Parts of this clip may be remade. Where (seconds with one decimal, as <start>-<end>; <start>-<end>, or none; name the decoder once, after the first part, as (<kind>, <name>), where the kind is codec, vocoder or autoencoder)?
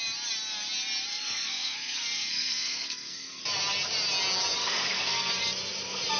1.1-3.4 (codec, SNAC); 4.6-5.3